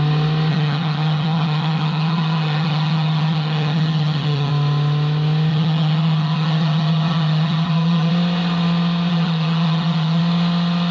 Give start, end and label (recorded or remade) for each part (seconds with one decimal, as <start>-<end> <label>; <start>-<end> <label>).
0.0-0.5 recorded; 0.5-4.5 remade; 4.5-5.5 recorded; 5.5-8.1 remade; 8.1-9.1 recorded; 9.1-10.2 remade; 10.2-10.9 recorded